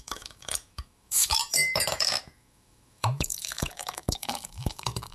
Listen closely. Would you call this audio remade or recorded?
remade